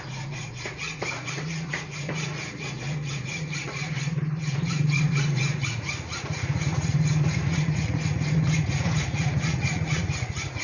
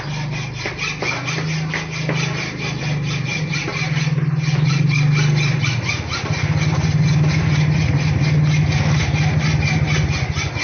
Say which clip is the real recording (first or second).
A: second